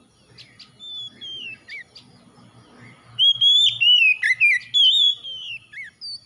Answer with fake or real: real